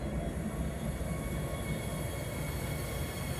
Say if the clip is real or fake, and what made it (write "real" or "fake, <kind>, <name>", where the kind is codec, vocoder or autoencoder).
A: real